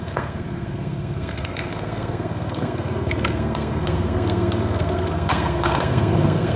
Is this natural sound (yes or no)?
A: no